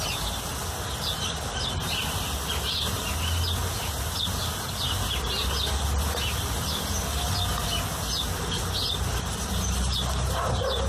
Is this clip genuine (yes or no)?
yes